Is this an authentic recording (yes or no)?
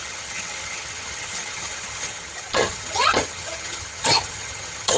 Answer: no